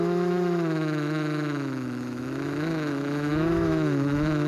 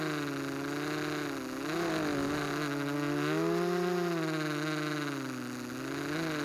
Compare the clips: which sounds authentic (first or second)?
second